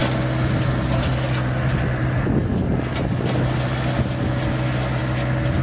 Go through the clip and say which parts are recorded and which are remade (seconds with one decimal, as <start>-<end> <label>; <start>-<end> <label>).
0.0-5.6 recorded